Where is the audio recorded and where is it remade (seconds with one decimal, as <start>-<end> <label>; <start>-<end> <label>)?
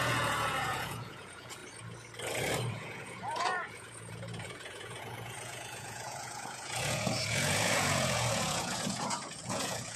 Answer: 0.0-1.6 remade; 1.6-2.7 recorded; 2.7-10.0 remade